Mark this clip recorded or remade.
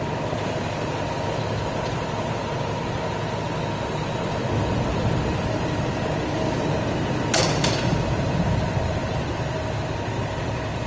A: recorded